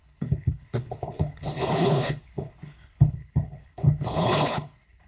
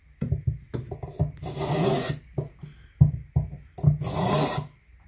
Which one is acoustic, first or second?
second